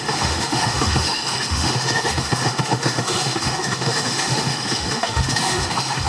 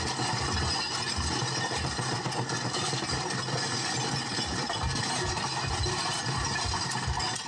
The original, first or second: second